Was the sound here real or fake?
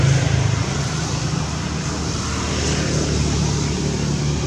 real